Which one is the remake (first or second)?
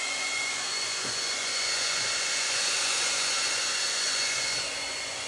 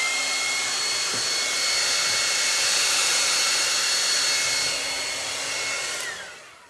first